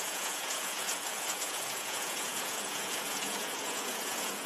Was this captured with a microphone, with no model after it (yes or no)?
no